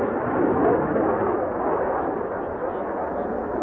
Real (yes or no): yes